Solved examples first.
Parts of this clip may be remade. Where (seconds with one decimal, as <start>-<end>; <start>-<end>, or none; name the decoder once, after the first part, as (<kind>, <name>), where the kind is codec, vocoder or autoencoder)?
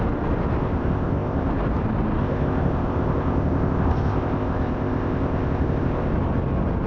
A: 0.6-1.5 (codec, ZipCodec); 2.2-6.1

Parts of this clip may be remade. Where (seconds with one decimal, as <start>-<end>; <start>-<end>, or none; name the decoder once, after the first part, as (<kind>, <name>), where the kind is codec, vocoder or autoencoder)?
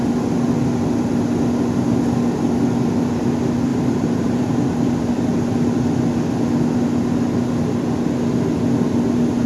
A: 3.7-4.5 (vocoder, BigVGAN v2)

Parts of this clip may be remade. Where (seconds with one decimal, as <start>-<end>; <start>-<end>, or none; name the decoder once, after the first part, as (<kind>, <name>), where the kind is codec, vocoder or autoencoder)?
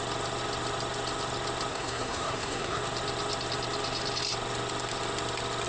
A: 1.7-2.8 (codec, SNAC)